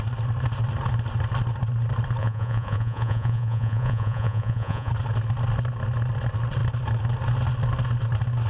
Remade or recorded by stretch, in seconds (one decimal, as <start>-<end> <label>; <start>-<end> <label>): 0.0-2.2 recorded; 2.2-4.9 remade; 4.9-8.5 recorded